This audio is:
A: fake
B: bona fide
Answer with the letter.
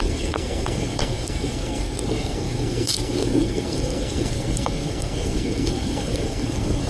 A